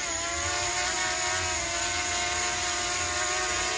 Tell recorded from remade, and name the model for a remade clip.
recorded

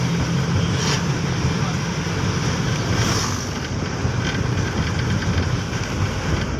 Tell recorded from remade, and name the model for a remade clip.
recorded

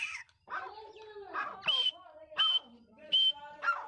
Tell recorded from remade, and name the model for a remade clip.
remade, vocoder, BigVGAN v2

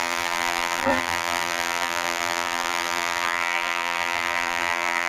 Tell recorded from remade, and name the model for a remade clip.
remade, vocoder, BigVGAN v2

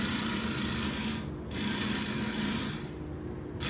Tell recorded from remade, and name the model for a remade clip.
recorded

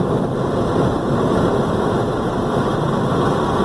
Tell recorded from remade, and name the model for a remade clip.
recorded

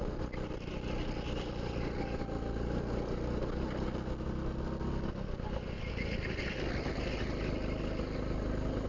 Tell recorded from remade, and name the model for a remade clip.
recorded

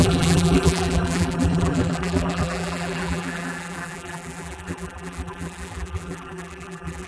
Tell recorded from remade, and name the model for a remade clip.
remade, vocoder, BigVGAN v2